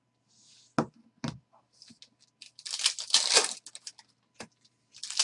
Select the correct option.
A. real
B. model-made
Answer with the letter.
A